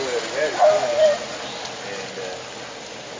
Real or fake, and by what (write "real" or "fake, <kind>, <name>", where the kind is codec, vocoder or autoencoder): real